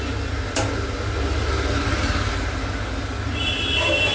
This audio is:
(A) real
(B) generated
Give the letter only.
A